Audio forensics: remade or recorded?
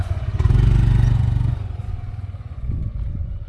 remade